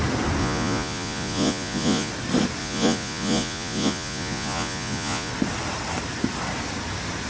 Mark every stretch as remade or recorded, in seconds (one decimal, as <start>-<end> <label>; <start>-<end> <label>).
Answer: 0.0-0.4 recorded; 0.4-2.1 remade; 2.1-2.6 recorded; 2.6-5.3 remade; 5.3-7.3 recorded